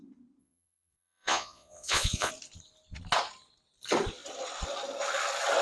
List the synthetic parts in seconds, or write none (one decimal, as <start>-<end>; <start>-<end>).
0.4-2.3